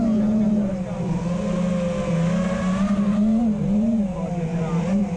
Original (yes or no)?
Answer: yes